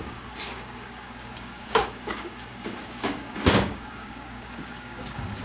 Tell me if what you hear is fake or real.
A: fake